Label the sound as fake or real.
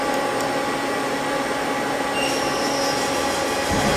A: real